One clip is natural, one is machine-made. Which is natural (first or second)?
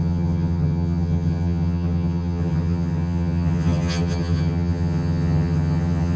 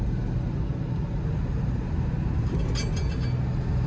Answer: second